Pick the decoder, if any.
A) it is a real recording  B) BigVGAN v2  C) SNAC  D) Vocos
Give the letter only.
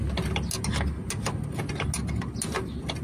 A